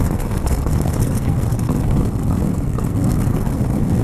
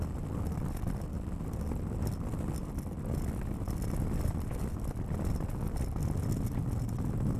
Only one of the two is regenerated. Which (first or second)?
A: first